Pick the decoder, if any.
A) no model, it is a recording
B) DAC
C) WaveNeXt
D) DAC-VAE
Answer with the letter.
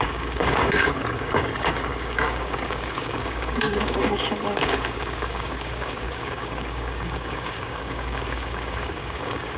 B